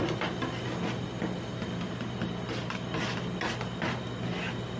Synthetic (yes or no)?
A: no